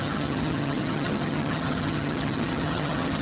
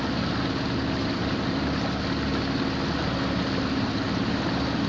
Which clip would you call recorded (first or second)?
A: second